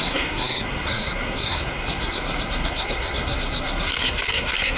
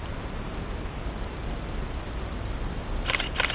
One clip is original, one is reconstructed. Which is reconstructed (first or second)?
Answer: first